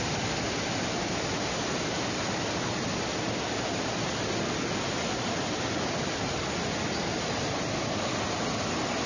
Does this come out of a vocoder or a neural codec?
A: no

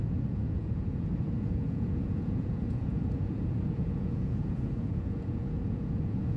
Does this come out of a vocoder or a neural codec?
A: yes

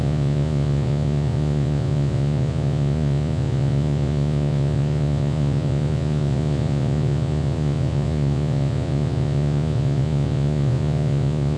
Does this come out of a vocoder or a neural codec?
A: yes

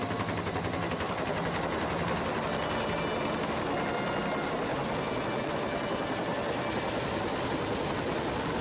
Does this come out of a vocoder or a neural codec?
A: no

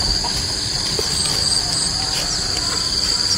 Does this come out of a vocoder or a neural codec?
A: no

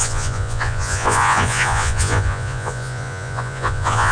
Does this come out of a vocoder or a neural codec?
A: yes